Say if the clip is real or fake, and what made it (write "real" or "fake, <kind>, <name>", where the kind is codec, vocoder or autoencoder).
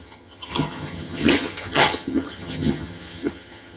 fake, vocoder, HiFi-GAN